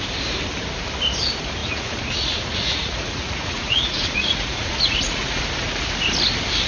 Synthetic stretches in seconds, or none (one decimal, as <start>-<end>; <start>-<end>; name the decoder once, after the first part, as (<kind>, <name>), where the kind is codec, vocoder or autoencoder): 1.6-5.4 (vocoder, Vocos)

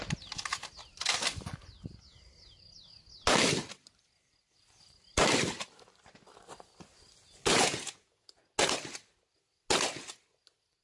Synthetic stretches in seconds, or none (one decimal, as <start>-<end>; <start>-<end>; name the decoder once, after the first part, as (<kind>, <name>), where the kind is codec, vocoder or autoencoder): 7.5-8.4 (vocoder, Vocos)

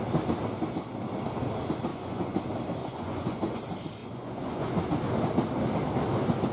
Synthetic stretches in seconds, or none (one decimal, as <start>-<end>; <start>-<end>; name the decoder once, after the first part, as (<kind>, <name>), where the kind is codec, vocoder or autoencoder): 1.9-2.4 (vocoder, Vocos); 2.8-3.6; 4.0-4.7

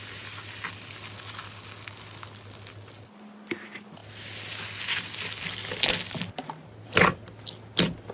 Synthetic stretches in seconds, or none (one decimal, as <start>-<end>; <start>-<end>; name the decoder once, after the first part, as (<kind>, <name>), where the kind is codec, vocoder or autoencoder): none

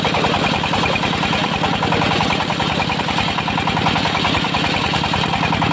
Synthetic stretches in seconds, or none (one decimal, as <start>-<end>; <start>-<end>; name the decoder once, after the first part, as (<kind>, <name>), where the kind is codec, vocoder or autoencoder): none

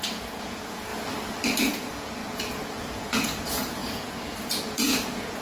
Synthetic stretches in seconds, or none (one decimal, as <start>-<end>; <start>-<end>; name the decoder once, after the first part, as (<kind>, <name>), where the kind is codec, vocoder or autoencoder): 0.0-0.9 (vocoder, Vocos); 1.6-5.4

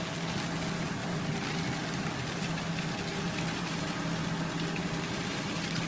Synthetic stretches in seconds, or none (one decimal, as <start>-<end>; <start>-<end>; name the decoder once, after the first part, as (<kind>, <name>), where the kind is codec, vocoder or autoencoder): none

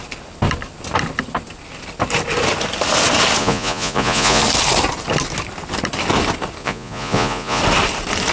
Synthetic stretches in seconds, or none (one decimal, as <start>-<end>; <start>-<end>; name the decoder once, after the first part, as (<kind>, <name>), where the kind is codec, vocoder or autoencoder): 3.4-4.4 (vocoder, Vocos); 6.6-7.6